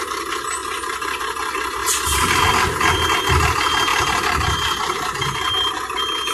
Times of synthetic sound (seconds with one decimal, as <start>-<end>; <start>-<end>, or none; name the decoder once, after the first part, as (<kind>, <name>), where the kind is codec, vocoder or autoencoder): 0.6-1.2 (vocoder, BigVGAN v2); 1.8-2.4; 3.9-5.7